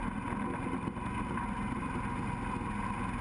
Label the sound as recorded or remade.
recorded